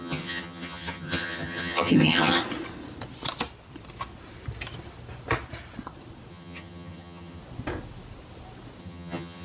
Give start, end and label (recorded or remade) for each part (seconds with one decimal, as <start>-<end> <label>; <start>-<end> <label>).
0.0-2.4 remade; 2.4-6.3 recorded; 6.3-7.4 remade; 7.4-8.8 recorded; 8.8-9.4 remade